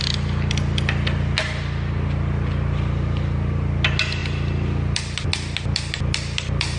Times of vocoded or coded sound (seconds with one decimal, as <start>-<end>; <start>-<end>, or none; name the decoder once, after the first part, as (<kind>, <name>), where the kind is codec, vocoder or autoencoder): none